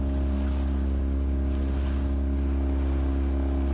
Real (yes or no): yes